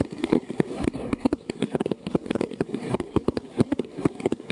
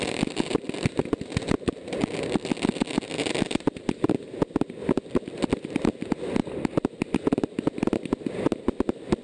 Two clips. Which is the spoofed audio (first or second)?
first